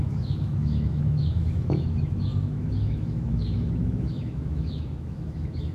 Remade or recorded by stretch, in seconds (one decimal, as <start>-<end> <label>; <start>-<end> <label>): 0.0-5.7 remade

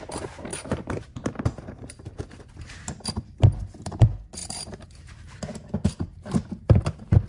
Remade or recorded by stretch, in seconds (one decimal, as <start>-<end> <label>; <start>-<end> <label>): 0.0-0.5 recorded; 0.5-2.1 remade; 2.1-4.4 recorded; 4.4-5.4 remade; 5.4-7.3 recorded

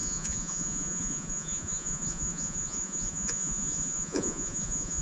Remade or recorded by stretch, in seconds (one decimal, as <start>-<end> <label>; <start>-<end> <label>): 0.0-5.0 remade